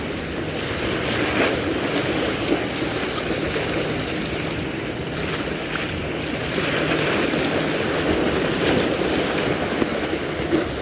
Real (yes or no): yes